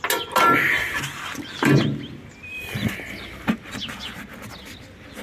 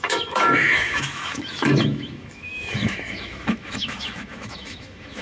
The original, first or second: first